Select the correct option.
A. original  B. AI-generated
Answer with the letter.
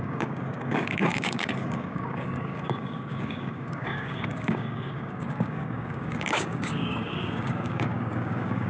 B